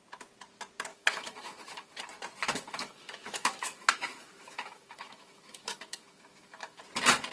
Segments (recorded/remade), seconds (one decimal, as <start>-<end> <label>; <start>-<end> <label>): 0.0-0.9 recorded; 0.9-2.0 remade; 2.0-2.4 recorded; 2.4-6.8 remade; 6.8-7.3 recorded